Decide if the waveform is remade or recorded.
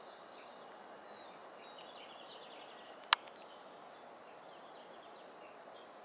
recorded